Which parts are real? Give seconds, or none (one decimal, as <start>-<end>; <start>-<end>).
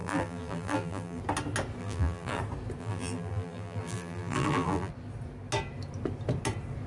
1.2-1.8; 2.4-2.8; 4.9-6.9